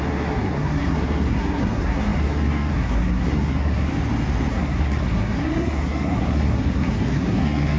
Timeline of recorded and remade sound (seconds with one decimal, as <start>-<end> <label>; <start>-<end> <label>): 0.0-3.9 remade; 3.9-4.5 recorded; 4.5-7.8 remade